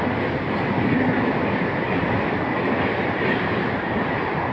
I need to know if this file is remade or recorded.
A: recorded